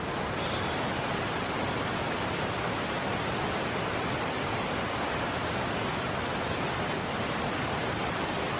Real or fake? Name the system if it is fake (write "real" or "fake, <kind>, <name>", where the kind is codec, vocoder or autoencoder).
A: real